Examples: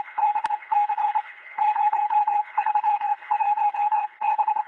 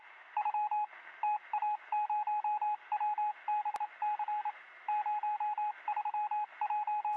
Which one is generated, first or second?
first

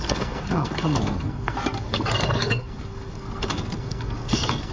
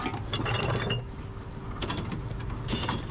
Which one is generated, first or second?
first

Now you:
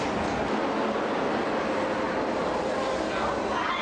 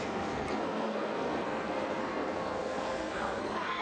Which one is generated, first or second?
second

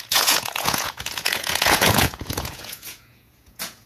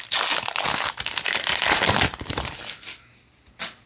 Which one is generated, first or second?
first